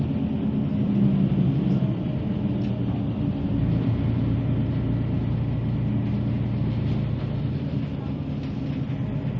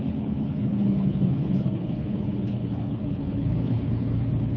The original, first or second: first